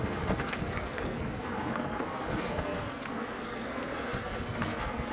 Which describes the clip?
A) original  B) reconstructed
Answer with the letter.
B